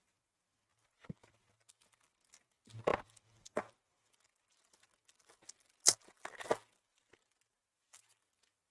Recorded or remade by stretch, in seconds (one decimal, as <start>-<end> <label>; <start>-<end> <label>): 0.0-8.7 recorded